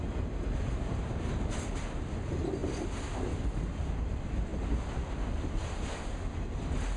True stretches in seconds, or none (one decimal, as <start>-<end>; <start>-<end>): 0.0-7.0